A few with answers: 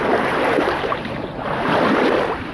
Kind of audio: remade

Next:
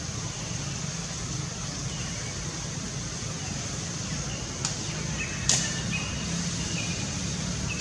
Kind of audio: recorded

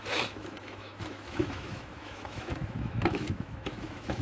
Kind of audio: remade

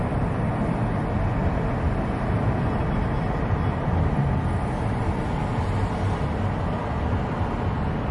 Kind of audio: recorded